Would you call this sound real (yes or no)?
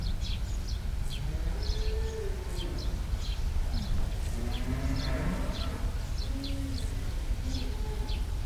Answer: yes